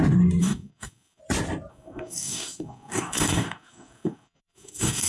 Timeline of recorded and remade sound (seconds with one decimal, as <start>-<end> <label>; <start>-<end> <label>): 0.0-0.4 recorded; 0.4-1.2 remade; 1.2-1.7 recorded; 1.7-5.1 remade